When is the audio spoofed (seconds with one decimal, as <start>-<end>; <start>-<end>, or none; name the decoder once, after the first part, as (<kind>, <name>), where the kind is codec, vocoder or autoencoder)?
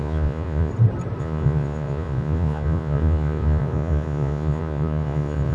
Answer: 0.0-0.7 (vocoder, Vocos); 1.2-5.5